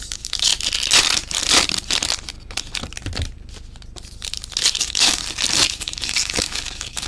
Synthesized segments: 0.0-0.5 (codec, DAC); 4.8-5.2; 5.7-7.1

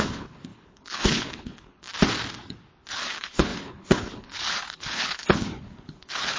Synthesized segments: 0.0-1.9 (codec, HILCodec); 2.9-6.4

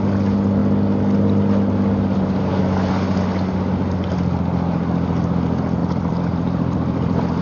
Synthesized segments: 5.8-7.4 (vocoder, BigVGAN v2)

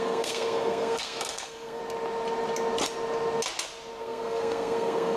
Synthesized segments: 0.0-1.8 (codec, SNAC); 4.0-5.2

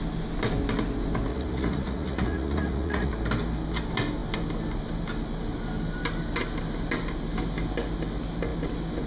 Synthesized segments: 1.3-3.1 (vocoder, Vocos)